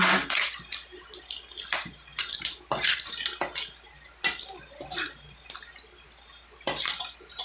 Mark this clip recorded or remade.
recorded